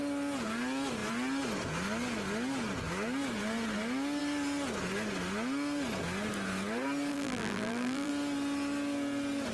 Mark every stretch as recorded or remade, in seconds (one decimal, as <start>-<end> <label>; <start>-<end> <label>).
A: 0.0-7.1 recorded; 7.1-8.1 remade; 8.1-9.5 recorded

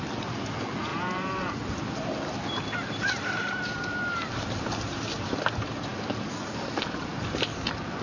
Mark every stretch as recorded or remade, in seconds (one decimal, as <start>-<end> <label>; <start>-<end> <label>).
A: 0.0-0.9 recorded; 0.9-1.8 remade; 1.8-2.4 recorded; 2.4-5.0 remade; 5.0-7.1 recorded; 7.1-7.6 remade; 7.6-8.0 recorded

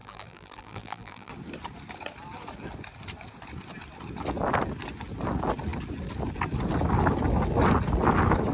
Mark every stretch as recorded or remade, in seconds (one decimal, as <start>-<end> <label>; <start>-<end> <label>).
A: 0.0-1.3 remade; 1.3-8.5 recorded

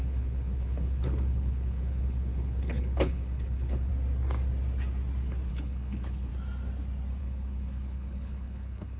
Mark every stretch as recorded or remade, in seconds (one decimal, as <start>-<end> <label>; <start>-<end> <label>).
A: 0.0-3.9 remade; 3.9-5.5 recorded; 5.5-6.3 remade; 6.3-7.2 recorded; 7.2-9.0 remade